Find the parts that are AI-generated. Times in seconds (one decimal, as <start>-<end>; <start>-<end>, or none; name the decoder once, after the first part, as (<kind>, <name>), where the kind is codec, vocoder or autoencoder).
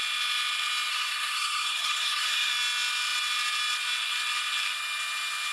0.9-2.5 (codec, SNAC)